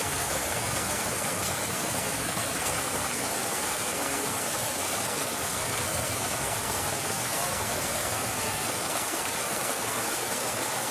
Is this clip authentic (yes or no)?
no